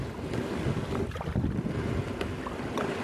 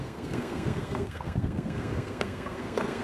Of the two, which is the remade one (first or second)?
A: second